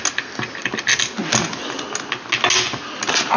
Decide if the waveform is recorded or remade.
recorded